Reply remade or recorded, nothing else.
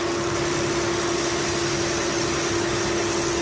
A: recorded